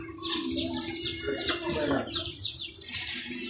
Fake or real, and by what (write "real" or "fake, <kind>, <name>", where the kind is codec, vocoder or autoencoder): real